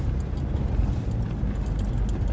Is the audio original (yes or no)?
yes